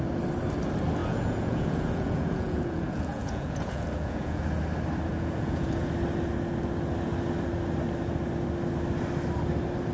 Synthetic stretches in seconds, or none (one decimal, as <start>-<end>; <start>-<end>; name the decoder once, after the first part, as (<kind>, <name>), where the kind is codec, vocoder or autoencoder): 1.0-4.4 (vocoder, Vocos); 5.1-5.9